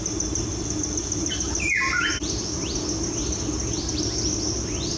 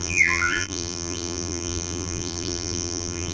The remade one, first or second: second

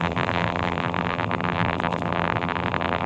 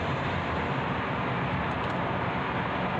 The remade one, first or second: first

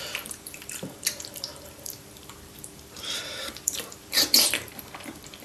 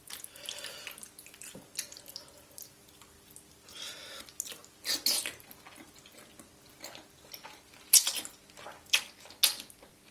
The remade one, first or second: first